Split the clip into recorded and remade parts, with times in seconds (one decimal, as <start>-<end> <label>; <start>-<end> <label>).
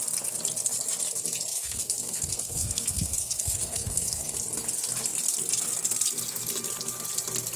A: 0.0-1.5 recorded; 1.5-4.3 remade; 4.3-7.6 recorded